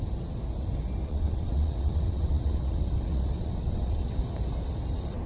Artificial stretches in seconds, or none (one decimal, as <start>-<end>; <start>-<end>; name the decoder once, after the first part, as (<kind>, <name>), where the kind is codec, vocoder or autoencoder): 1.0-4.2 (vocoder, WaveNeXt)